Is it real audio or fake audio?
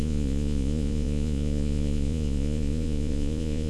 fake